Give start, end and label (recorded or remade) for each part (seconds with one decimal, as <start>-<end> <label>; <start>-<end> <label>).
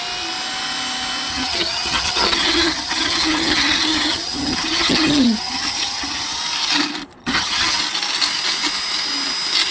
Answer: 0.0-1.3 recorded; 1.3-6.4 remade; 6.4-7.2 recorded; 7.2-7.8 remade; 7.8-9.7 recorded